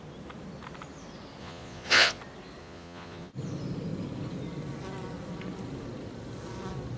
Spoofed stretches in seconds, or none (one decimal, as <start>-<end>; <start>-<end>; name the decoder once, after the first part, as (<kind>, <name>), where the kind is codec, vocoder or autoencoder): 1.4-2.2 (vocoder, Vocos); 2.6-3.3